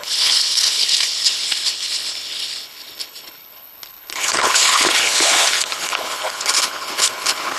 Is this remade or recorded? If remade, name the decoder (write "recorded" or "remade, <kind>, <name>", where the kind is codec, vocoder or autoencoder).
remade, codec, HILCodec